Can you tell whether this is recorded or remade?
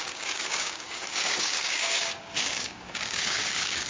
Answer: remade